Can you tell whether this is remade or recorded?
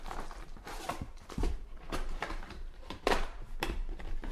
remade